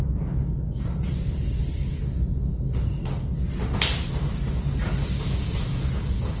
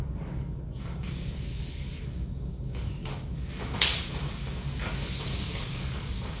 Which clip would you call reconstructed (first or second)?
second